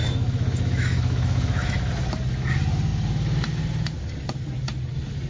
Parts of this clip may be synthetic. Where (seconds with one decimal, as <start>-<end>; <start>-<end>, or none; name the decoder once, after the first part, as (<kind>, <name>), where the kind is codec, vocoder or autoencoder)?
0.0-1.9 (autoencoder, DAC-VAE)